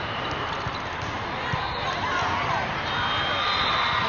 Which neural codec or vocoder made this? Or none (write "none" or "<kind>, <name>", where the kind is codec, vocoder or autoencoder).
none